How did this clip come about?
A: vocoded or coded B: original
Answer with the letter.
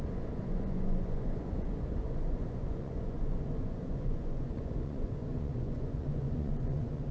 A